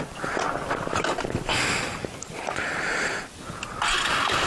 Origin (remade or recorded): recorded